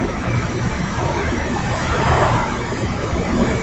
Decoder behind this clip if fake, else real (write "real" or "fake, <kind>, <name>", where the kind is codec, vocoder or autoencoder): fake, autoencoder, DAC-VAE